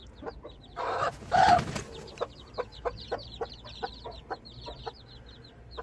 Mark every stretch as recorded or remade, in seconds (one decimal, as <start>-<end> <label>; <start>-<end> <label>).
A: 0.0-5.8 remade